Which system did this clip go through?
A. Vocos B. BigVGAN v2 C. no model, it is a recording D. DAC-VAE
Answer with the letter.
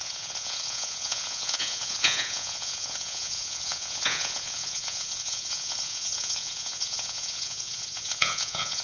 A